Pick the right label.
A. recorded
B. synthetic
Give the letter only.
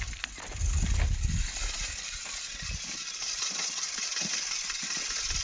A